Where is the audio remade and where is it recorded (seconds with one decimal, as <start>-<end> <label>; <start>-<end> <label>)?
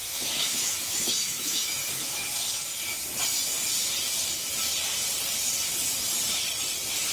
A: 0.0-2.3 remade; 2.3-7.1 recorded